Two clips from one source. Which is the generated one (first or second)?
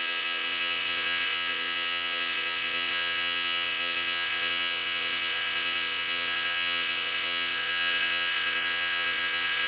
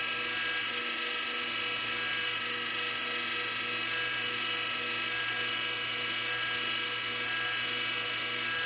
first